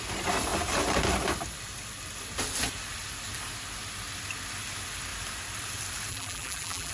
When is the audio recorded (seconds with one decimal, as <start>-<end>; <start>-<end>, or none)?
0.0-6.1

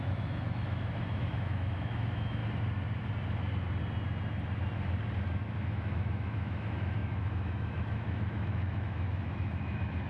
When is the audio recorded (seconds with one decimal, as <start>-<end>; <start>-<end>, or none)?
2.4-5.6

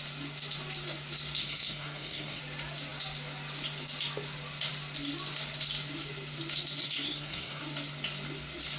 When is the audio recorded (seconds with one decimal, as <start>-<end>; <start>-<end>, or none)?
0.0-1.4; 2.4-6.8; 7.6-8.8

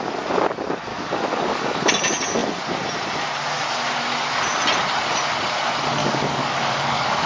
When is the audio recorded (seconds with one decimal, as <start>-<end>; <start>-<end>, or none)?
0.0-0.9; 1.9-6.0

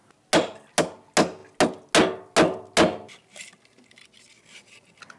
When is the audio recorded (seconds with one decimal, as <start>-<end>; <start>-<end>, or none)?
0.0-5.2

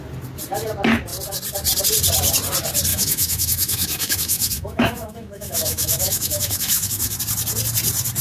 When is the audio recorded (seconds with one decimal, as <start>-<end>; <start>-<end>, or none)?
0.0-2.9; 7.2-8.2

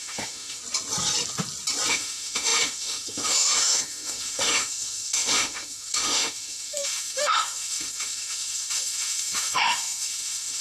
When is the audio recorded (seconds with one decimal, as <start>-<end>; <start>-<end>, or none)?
0.6-1.9

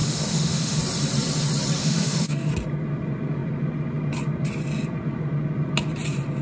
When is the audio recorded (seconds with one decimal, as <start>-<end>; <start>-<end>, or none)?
0.8-1.8; 2.5-6.4